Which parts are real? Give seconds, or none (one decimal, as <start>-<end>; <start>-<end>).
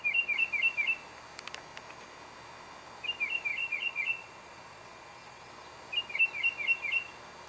0.0-3.5; 5.5-7.5